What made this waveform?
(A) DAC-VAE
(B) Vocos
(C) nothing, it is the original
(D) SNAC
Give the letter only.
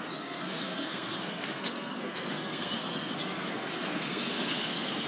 D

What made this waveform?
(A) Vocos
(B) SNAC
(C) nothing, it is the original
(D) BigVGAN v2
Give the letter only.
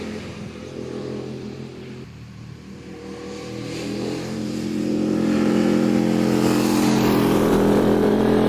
D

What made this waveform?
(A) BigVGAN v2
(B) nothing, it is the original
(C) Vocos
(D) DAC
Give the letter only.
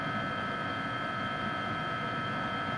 C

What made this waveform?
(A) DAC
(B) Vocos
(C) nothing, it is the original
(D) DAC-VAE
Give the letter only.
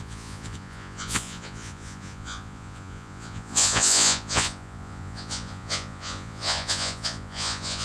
B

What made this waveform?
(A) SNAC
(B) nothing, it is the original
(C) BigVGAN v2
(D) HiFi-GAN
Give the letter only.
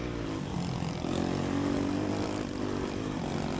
B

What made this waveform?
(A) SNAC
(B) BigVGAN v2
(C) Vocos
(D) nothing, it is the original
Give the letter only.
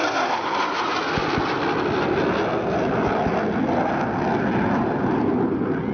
D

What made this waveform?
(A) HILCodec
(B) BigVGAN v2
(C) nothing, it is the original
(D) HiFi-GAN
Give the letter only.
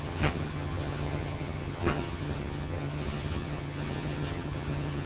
D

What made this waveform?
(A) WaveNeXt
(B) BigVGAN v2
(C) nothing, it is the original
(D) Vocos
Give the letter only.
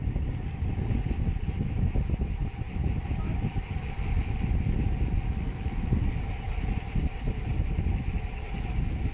C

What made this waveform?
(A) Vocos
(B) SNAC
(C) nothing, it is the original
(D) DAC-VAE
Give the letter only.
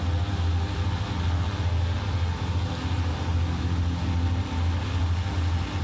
C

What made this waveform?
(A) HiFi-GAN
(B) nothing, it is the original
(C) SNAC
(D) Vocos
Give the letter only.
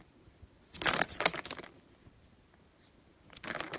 B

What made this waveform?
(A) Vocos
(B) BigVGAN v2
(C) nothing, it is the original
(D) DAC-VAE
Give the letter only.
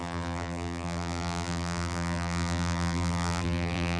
B